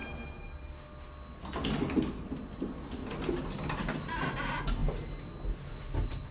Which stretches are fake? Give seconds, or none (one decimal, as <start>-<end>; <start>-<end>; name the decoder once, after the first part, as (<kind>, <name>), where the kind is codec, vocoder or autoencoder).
3.8-4.8 (vocoder, BigVGAN v2); 5.5-6.3